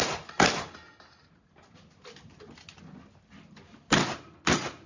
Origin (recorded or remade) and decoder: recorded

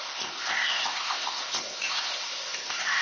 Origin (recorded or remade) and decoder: remade, codec, ZipCodec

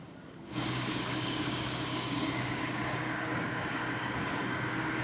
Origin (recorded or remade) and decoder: remade, codec, DAC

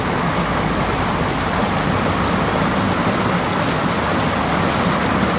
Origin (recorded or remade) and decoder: recorded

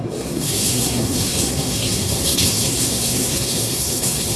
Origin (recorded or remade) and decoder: remade, codec, SNAC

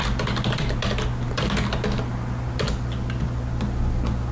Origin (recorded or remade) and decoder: recorded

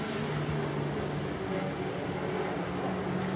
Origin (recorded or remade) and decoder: recorded